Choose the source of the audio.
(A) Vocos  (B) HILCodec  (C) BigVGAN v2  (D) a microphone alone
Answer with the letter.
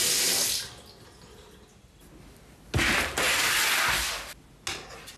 D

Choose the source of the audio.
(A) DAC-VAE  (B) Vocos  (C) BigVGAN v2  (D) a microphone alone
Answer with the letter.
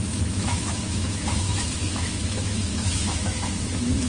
A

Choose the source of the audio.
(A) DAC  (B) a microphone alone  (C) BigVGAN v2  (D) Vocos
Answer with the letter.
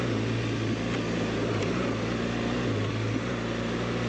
B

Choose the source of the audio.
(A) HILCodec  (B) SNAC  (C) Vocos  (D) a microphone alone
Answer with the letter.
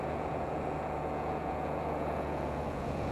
C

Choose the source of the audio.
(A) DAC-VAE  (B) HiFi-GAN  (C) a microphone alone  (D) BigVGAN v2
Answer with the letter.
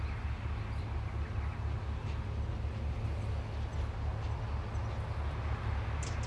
C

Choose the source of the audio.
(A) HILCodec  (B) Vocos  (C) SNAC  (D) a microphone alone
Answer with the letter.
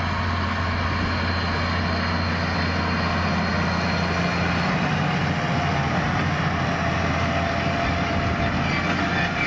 D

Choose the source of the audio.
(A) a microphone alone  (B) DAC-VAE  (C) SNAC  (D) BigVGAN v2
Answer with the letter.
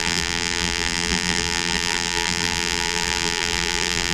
D